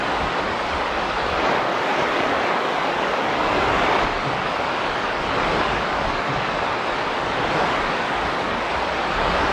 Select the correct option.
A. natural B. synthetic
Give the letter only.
B